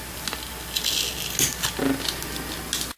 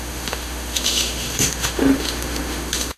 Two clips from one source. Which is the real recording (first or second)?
first